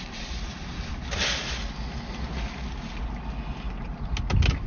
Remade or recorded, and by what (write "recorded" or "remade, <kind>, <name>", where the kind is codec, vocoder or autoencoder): recorded